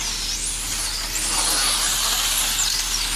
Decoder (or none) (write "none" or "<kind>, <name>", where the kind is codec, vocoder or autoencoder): none